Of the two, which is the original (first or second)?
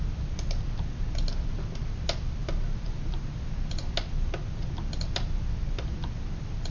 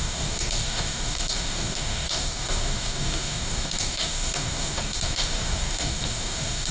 first